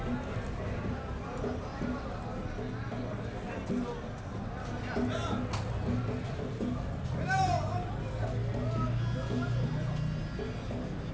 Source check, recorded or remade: recorded